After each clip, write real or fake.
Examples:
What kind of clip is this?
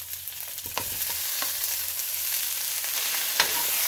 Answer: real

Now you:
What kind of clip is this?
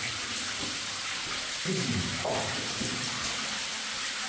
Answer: real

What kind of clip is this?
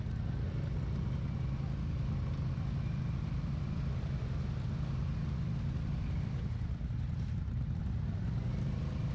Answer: real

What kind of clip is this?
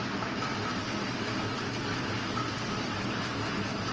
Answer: fake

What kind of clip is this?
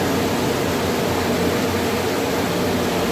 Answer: real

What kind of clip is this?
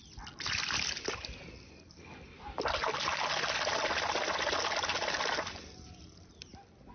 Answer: real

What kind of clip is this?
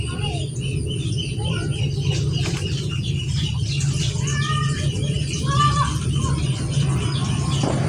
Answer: fake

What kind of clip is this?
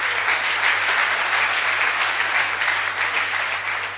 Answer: real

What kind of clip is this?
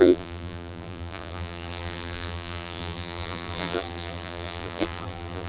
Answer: fake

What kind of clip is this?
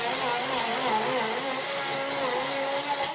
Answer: real